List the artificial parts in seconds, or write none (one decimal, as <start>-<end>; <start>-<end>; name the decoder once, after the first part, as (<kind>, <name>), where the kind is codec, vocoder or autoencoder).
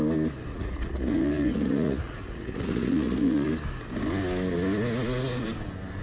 0.5-3.5 (vocoder, Vocos)